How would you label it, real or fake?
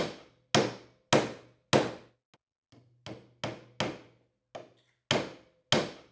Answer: real